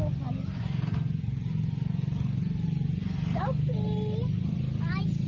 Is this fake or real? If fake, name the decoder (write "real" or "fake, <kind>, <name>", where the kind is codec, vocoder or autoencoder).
real